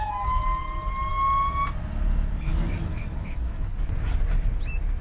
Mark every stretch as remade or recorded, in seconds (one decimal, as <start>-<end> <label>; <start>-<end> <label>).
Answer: 0.0-2.5 recorded; 2.5-3.7 remade; 3.7-5.0 recorded